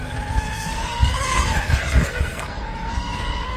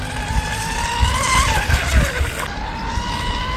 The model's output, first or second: first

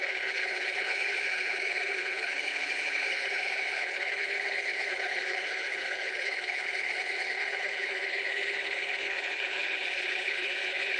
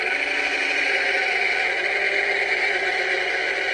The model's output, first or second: first